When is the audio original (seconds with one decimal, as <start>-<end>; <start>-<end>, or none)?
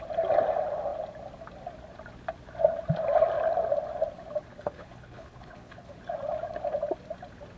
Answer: 0.0-4.5; 5.9-7.6